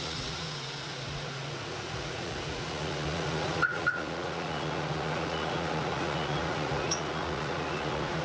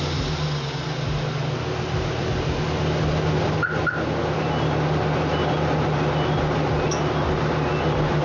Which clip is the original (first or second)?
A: second